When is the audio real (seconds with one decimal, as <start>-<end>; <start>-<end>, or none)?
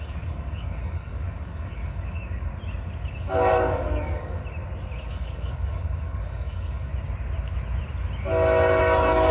2.5-3.2; 4.4-5.1; 6.9-8.8